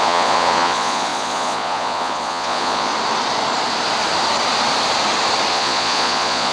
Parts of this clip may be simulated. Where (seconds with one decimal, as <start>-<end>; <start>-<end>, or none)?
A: 0.0-2.9; 5.5-6.5